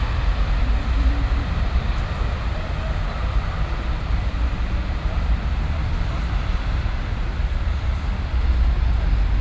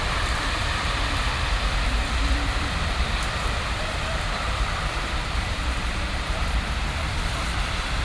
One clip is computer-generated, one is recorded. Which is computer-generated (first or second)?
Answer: second